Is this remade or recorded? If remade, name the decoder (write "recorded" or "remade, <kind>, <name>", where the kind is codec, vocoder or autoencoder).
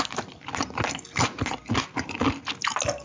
recorded